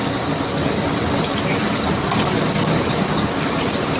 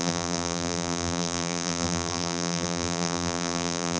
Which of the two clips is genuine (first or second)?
first